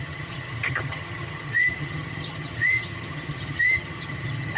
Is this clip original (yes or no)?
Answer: no